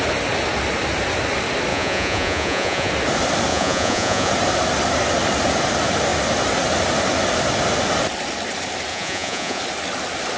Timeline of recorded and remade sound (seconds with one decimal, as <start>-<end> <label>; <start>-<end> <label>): 0.0-1.7 recorded; 1.7-2.9 remade; 2.9-3.5 recorded; 3.5-4.3 remade; 4.3-8.9 recorded; 8.9-9.6 remade; 9.6-10.4 recorded